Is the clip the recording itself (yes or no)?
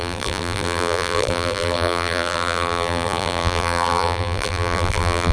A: no